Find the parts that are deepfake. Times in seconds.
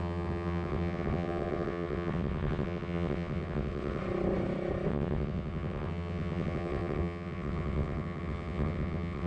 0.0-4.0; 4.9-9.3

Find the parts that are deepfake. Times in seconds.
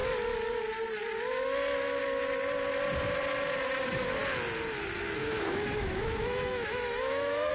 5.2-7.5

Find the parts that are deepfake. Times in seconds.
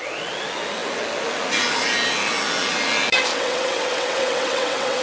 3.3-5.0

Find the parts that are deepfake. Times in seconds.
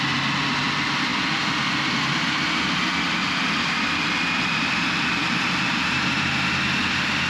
1.1-2.0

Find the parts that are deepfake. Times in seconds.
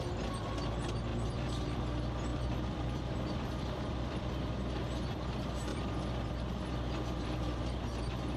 1.1-1.8; 2.3-4.3; 5.7-6.3